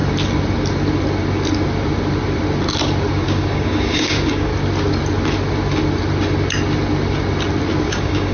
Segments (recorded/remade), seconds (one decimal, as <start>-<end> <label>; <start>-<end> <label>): 0.0-3.1 recorded; 3.1-4.5 remade; 4.5-7.8 recorded; 7.8-8.3 remade